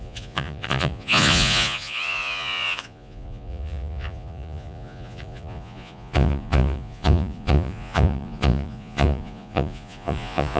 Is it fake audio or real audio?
fake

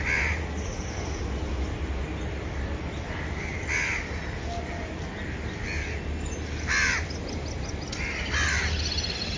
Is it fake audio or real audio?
real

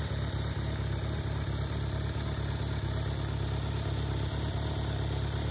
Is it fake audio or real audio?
real